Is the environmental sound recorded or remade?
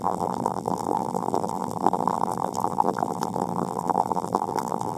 remade